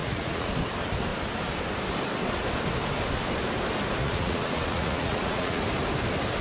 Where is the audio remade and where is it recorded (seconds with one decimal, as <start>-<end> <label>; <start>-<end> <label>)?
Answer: 0.0-0.5 remade; 0.5-4.0 recorded; 4.0-5.6 remade; 5.6-6.4 recorded